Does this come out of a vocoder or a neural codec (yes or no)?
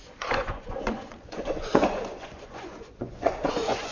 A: yes